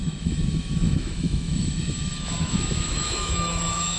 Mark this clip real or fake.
fake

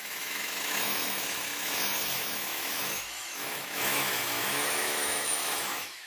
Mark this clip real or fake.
fake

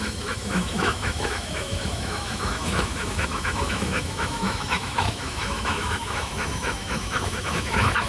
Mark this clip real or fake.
fake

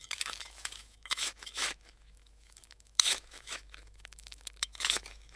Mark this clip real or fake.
fake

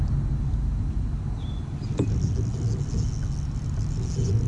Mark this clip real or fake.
real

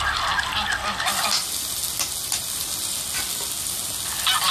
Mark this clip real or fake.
real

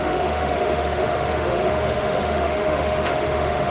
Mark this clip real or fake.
fake